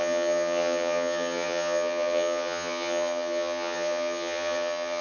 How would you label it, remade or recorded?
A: remade